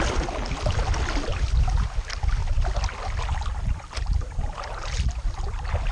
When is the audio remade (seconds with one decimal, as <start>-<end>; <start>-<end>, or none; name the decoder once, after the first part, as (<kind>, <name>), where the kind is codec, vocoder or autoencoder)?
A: none